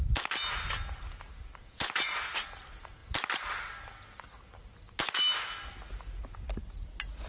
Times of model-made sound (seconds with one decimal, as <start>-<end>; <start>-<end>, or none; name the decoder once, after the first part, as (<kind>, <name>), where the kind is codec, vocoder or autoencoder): 1.6-2.3 (vocoder, Vocos)